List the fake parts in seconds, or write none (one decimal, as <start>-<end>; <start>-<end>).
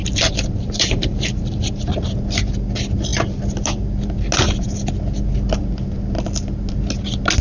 0.0-1.9